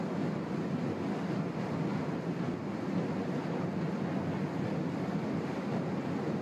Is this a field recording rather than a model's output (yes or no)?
yes